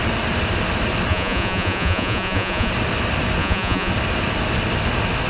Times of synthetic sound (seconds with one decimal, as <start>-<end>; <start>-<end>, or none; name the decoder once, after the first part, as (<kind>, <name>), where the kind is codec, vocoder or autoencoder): 1.1-2.7 (vocoder, Vocos); 3.4-3.9